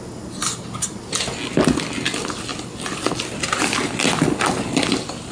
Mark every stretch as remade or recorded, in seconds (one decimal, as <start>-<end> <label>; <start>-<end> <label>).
0.0-5.3 recorded